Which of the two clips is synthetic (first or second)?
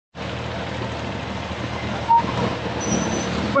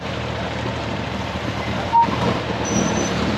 second